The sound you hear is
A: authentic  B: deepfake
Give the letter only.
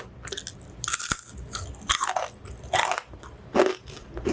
A